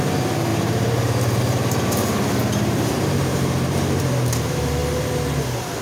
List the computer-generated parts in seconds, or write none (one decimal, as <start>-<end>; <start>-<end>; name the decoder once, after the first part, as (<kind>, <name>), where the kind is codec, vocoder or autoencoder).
0.5-4.0 (vocoder, BigVGAN v2)